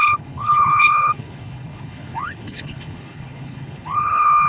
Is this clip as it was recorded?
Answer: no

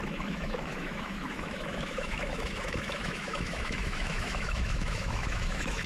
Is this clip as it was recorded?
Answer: no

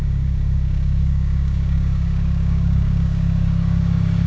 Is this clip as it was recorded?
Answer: no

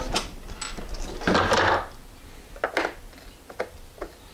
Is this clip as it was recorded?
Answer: yes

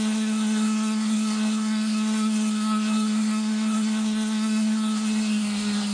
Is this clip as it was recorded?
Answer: no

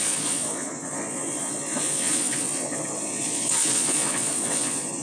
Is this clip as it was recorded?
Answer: no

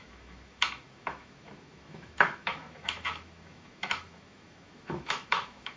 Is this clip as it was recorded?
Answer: no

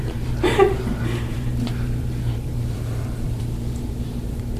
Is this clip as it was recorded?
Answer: no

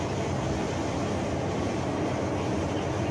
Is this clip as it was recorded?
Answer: yes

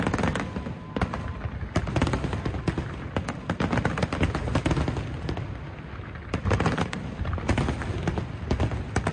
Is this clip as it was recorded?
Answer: yes